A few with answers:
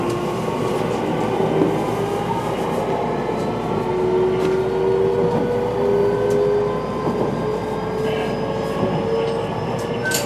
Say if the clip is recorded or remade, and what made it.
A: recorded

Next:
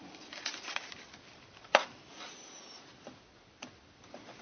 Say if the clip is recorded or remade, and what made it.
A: remade, vocoder, BigVGAN v2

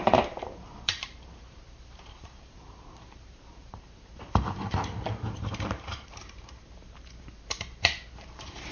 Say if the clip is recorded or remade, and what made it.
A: remade, vocoder, BigVGAN v2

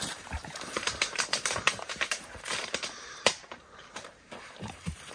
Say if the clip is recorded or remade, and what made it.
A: remade, vocoder, BigVGAN v2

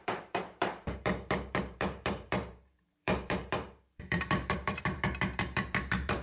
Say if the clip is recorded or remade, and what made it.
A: remade, vocoder, BigVGAN v2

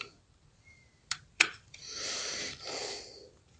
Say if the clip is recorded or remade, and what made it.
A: remade, vocoder, BigVGAN v2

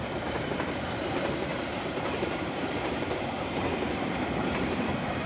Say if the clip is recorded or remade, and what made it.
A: remade, vocoder, BigVGAN v2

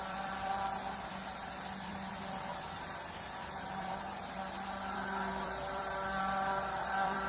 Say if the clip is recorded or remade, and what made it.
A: remade, vocoder, BigVGAN v2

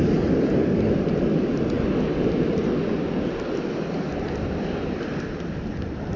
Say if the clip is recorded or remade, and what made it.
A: recorded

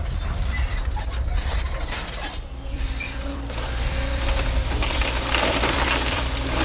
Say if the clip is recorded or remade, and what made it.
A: remade, vocoder, BigVGAN v2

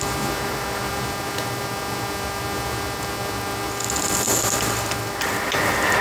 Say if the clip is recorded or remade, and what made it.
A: recorded